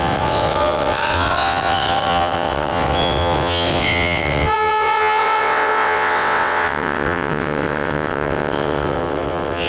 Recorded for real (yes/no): no